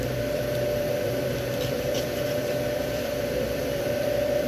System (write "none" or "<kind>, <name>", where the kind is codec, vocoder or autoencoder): vocoder, BigVGAN v2